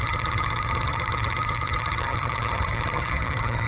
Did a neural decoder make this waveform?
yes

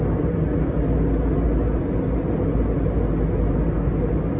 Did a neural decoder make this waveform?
no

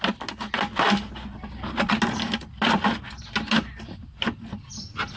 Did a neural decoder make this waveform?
no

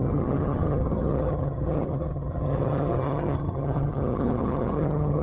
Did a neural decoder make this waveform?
yes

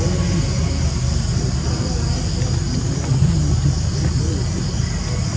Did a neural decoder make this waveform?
no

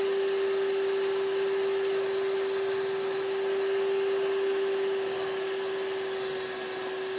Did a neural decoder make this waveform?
no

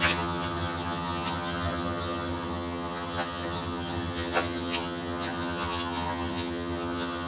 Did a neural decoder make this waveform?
yes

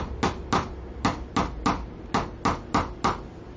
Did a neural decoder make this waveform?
no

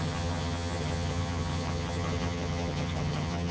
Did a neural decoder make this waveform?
yes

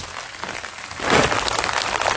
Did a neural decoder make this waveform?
no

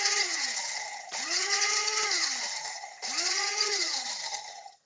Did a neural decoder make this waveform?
yes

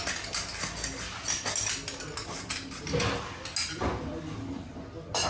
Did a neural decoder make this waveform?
no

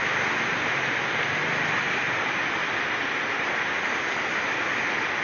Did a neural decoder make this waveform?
no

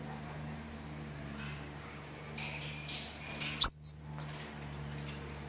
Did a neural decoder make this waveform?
no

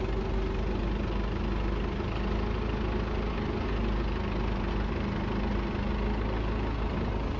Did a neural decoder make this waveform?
no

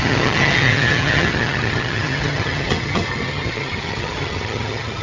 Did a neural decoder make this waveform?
yes